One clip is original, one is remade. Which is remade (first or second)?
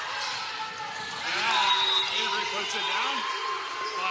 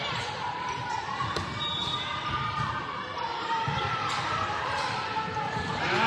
second